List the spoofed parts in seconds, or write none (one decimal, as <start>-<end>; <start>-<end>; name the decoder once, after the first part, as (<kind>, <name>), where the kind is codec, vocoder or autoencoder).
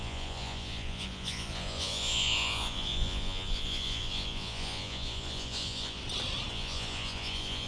0.0-6.0 (vocoder, Vocos); 6.5-7.7